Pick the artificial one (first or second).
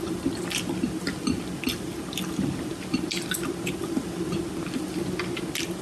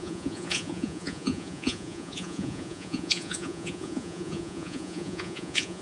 second